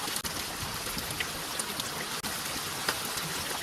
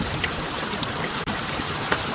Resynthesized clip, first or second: second